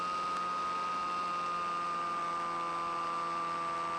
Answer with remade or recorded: recorded